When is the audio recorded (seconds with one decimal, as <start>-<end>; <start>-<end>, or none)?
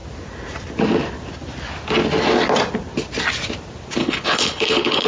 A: 0.0-4.0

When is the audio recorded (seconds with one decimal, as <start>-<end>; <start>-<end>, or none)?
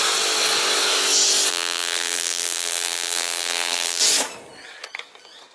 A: 0.0-1.5; 4.0-5.5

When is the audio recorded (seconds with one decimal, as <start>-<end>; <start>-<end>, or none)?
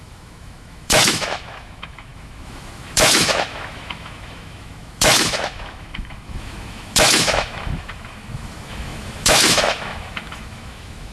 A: none